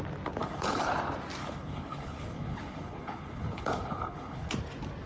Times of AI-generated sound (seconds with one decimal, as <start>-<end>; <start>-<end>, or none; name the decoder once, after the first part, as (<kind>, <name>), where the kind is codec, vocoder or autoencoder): 0.4-0.9 (codec, HILCodec); 1.4-4.5